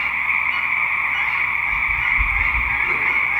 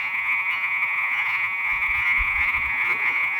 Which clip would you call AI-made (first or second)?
second